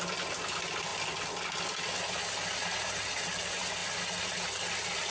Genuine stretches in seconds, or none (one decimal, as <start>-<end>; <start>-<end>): 0.0-5.1